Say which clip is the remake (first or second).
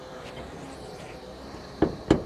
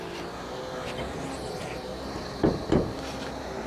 first